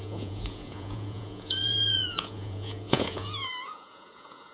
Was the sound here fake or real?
fake